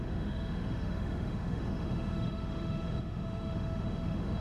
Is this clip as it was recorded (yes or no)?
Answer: no